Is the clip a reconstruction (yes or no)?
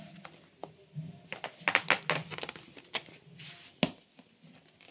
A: no